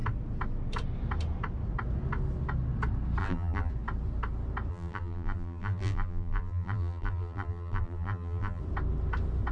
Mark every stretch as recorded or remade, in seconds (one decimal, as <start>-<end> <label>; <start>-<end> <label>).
0.0-3.2 recorded; 3.2-3.7 remade; 3.7-4.7 recorded; 4.7-8.6 remade; 8.6-9.5 recorded